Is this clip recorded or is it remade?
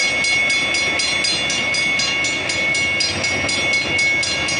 recorded